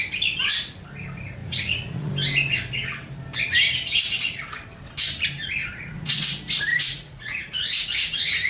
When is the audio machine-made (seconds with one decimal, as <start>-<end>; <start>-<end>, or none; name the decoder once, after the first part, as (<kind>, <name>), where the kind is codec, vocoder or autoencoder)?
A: 1.4-2.1 (vocoder, Vocos); 5.6-6.2; 6.7-8.5